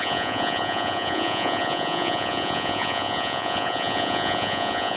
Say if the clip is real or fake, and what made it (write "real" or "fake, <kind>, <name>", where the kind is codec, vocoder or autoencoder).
fake, vocoder, Vocos